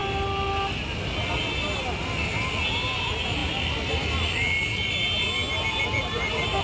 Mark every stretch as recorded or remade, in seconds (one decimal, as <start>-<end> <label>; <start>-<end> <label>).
0.0-6.6 recorded